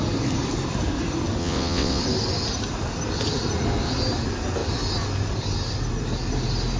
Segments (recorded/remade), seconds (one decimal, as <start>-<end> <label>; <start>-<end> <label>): 0.0-1.4 recorded; 1.4-2.0 remade; 2.0-6.8 recorded